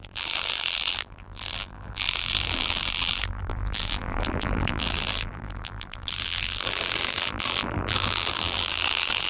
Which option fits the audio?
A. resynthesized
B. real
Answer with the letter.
A